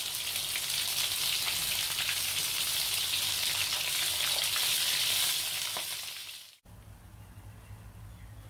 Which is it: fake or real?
real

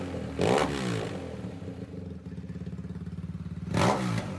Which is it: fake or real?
real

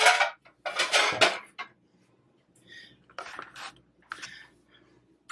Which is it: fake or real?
real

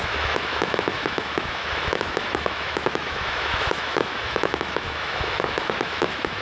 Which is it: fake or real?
fake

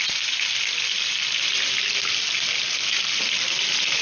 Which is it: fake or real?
real